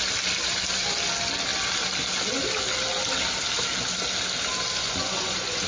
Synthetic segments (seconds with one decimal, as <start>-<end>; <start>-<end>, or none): 4.8-5.7